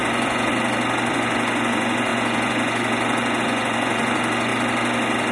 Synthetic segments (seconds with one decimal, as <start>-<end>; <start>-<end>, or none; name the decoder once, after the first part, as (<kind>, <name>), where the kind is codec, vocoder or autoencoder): 0.0-0.5 (vocoder, Vocos); 1.1-4.5